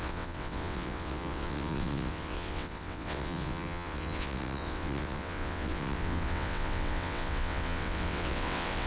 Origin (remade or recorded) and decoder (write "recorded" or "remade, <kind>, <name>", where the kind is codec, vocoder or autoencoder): remade, vocoder, WaveNeXt